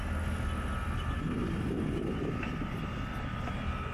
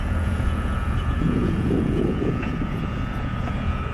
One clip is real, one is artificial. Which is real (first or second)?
first